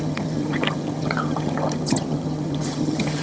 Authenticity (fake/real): fake